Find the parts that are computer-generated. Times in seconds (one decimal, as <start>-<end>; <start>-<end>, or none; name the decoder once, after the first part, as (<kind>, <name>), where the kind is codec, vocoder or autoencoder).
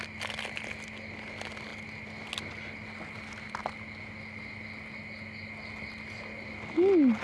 none